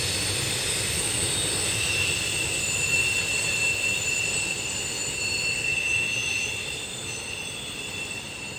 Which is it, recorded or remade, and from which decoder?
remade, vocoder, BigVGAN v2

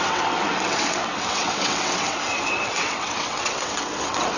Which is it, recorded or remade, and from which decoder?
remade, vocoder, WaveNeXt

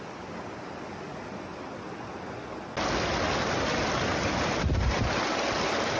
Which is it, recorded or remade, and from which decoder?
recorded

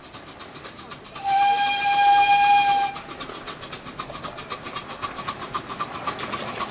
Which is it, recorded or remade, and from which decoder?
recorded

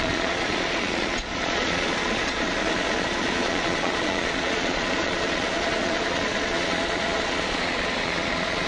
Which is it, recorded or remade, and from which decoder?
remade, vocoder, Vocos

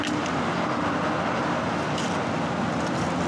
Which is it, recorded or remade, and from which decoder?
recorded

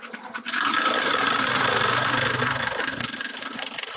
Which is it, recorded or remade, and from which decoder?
recorded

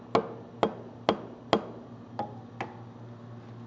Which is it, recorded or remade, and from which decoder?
recorded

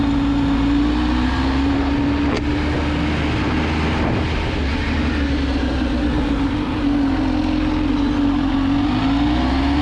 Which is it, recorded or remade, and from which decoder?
recorded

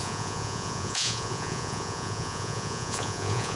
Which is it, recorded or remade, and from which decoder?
remade, vocoder, Vocos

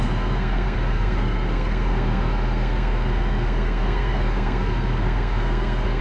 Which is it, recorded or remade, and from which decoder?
remade, codec, SNAC